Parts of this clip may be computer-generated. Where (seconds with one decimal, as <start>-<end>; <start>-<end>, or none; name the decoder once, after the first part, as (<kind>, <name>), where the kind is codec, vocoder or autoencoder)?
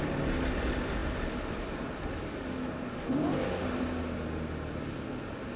none